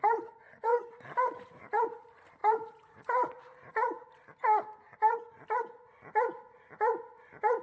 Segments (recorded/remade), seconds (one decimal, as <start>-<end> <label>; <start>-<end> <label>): 0.0-0.7 recorded; 0.7-1.6 remade; 1.6-2.4 recorded; 2.4-4.1 remade; 4.1-7.6 recorded